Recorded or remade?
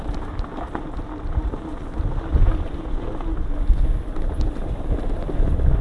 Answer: recorded